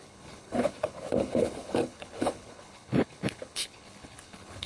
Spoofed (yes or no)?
yes